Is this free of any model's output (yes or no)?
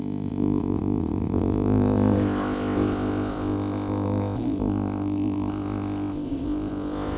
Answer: no